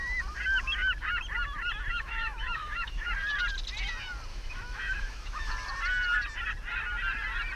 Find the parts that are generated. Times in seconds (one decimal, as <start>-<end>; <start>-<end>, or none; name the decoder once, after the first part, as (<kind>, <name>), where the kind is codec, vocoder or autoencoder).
1.9-3.1 (autoencoder, DAC-VAE); 4.3-5.5